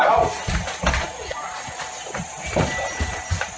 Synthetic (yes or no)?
no